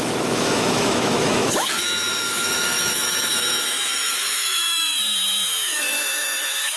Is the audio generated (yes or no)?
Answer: yes